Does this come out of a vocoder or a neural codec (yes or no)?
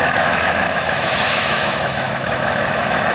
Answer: yes